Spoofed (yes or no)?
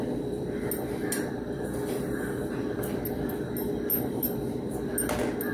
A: no